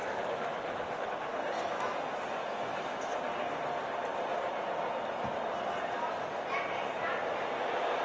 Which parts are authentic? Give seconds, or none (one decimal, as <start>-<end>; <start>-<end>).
1.1-2.4; 3.0-8.0